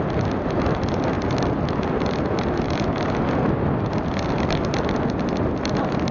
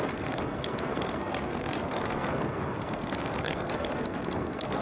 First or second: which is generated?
second